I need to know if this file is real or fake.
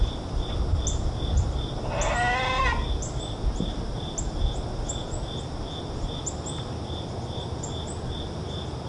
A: real